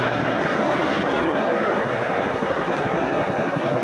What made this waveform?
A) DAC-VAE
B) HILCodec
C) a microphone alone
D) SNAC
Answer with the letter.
D